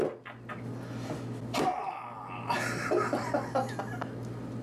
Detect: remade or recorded recorded